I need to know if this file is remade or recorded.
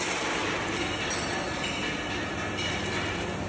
recorded